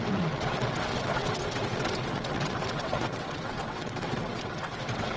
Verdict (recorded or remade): remade